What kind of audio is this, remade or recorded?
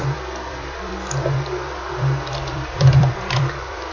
remade